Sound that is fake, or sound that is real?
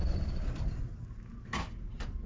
real